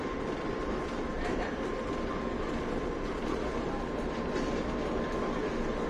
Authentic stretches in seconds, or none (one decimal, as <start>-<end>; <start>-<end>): 0.0-5.9